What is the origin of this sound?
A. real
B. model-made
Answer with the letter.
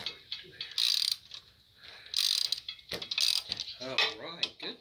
A